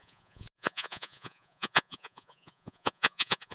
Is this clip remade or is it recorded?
remade